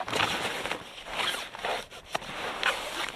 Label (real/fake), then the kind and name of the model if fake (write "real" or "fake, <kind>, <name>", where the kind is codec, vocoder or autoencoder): real